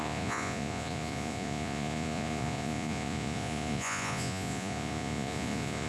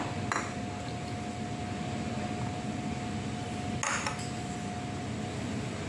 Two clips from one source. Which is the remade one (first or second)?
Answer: first